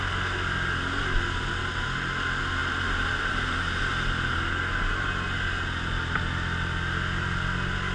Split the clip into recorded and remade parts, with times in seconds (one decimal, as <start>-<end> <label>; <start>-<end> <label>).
0.0-7.9 recorded

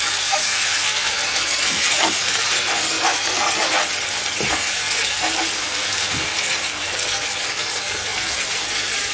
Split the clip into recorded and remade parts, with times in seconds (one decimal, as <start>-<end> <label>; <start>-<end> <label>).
0.0-3.8 remade; 3.8-4.5 recorded; 4.5-9.1 remade

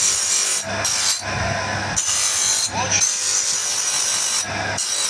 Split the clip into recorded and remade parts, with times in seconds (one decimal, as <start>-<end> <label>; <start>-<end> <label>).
0.0-5.1 recorded

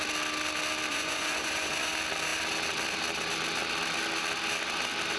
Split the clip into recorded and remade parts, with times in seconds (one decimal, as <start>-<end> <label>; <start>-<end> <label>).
0.0-0.9 recorded; 0.9-1.9 remade; 1.9-5.2 recorded

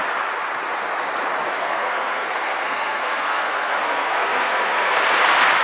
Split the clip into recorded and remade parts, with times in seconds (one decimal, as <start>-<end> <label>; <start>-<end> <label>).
0.0-1.6 recorded; 1.6-5.0 remade; 5.0-5.6 recorded

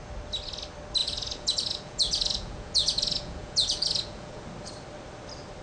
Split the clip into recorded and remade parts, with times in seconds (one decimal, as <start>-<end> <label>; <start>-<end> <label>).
0.0-1.0 recorded; 1.0-4.4 remade; 4.4-5.6 recorded

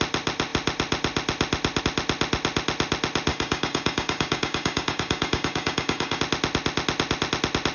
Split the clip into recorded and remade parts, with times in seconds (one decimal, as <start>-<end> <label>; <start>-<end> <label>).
0.0-3.3 recorded; 3.3-6.2 remade; 6.2-7.7 recorded

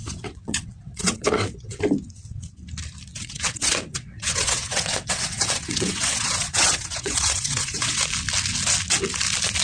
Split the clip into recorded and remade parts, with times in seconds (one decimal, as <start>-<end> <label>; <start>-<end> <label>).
0.0-1.8 remade; 1.8-3.1 recorded; 3.1-8.0 remade; 8.0-9.6 recorded